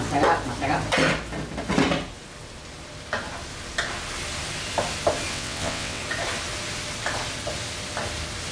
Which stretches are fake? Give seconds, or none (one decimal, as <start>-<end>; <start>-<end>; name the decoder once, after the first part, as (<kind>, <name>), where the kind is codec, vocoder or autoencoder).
5.3-6.0 (vocoder, WaveNeXt)